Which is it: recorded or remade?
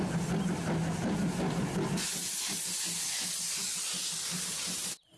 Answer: recorded